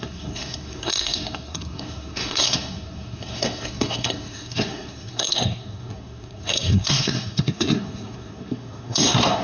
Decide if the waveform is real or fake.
fake